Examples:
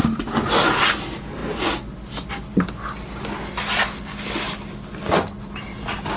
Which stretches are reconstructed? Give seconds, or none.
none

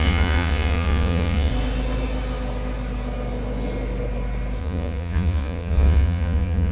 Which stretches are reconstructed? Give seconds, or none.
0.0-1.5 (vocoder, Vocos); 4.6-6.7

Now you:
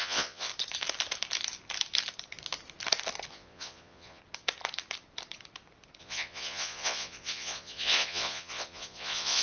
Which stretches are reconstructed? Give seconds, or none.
0.0-0.5 (vocoder, Vocos); 3.3-4.2; 6.0-9.4